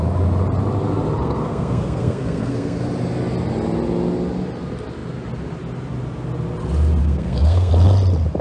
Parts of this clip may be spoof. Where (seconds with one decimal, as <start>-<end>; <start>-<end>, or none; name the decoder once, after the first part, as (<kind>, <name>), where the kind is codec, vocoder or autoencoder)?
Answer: 1.2-2.8 (codec, SNAC); 7.0-7.7